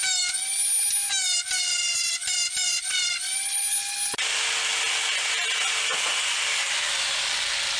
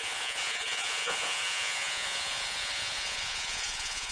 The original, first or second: first